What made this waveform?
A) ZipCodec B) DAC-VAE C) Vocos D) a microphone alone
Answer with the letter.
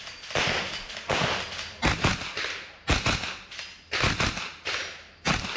D